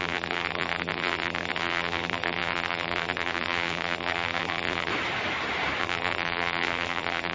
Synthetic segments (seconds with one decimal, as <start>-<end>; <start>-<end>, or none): 0.0-4.9; 5.8-7.3